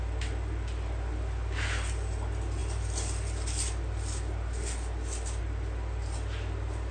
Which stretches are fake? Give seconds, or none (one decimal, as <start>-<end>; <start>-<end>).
none